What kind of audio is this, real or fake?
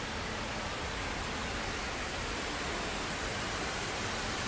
real